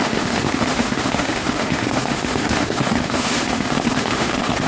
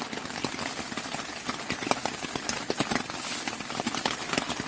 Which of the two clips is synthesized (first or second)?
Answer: first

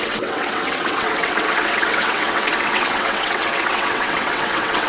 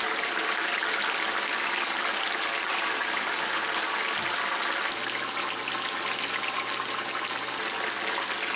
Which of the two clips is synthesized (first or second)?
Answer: first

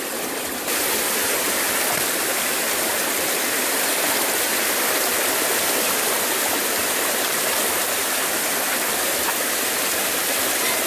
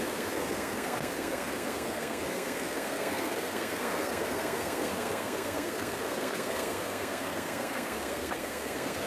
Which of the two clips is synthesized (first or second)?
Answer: second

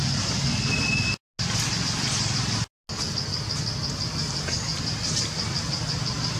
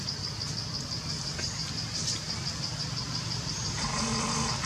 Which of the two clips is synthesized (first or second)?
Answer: second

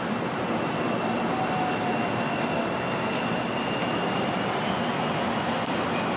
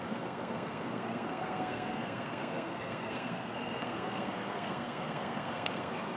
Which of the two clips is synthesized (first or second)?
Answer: second